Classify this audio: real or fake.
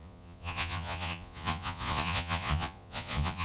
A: fake